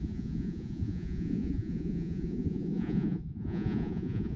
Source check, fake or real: fake